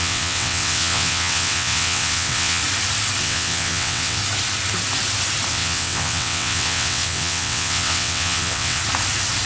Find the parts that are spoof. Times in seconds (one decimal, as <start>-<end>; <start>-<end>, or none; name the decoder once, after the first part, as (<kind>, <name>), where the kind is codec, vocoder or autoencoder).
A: 0.0-2.6 (vocoder, WaveNeXt); 3.2-4.2; 5.5-8.8